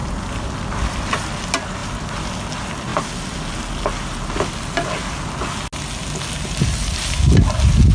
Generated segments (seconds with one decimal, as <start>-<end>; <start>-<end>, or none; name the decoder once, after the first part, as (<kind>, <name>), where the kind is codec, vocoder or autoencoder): none